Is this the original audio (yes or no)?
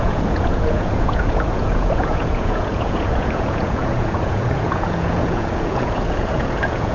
no